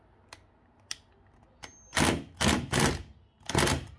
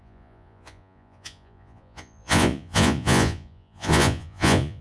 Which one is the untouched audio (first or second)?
first